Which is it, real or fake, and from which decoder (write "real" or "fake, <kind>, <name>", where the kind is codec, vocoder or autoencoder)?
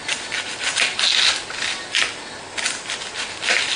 real